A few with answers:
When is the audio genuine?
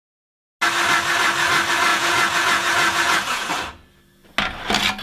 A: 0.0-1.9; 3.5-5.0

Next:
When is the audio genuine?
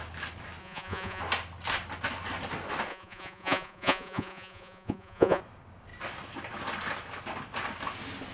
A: 0.0-0.6; 1.2-2.9; 5.4-8.3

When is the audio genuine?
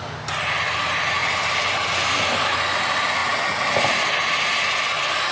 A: 0.0-5.3